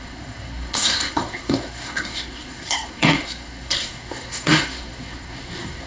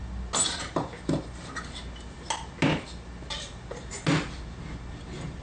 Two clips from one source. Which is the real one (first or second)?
second